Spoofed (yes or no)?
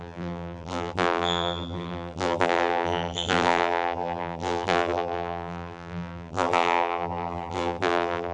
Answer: yes